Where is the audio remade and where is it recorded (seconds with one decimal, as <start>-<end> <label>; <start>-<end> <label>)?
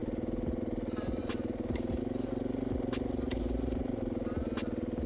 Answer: 0.0-1.2 recorded; 1.2-2.0 remade; 2.0-3.3 recorded; 3.3-3.9 remade; 3.9-5.1 recorded